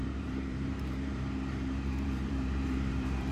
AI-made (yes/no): yes